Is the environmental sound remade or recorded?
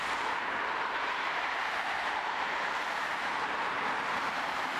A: remade